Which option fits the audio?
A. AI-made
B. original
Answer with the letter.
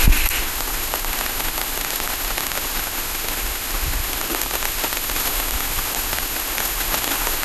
A